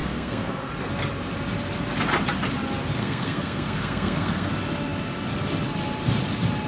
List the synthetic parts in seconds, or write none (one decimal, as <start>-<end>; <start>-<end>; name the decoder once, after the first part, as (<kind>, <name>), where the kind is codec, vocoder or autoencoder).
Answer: 0.0-0.7 (codec, SNAC); 3.0-4.5